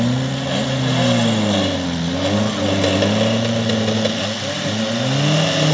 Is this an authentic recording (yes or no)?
yes